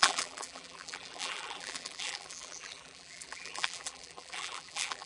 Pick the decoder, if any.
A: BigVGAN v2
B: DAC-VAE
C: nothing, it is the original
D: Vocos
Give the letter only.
A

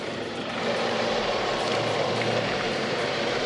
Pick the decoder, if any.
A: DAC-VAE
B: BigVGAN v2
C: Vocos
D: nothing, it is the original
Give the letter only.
B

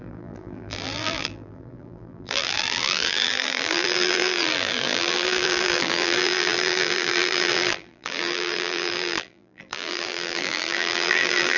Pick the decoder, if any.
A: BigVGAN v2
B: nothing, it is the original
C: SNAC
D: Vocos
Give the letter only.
A